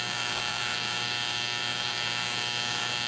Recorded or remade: remade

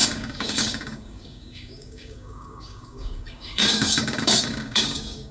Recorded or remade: remade